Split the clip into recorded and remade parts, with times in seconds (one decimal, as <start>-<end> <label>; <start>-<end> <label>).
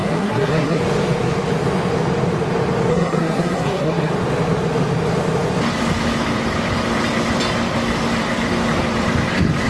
0.0-0.8 remade; 0.8-2.9 recorded; 2.9-4.1 remade; 4.1-9.7 recorded